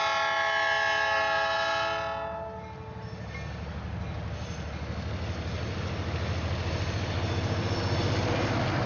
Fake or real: real